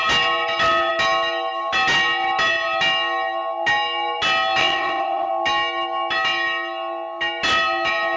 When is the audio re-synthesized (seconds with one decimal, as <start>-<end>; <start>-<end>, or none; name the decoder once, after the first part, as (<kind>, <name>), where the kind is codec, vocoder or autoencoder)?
4.6-5.3 (vocoder, WaveNeXt)